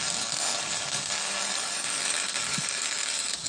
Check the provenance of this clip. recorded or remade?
remade